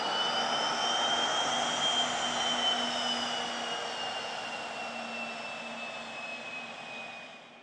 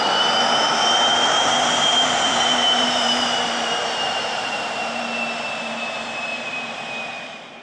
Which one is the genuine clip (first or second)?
first